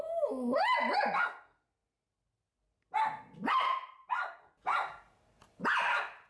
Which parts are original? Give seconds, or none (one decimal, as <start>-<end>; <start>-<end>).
0.0-6.3